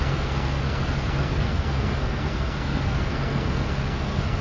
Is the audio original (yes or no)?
no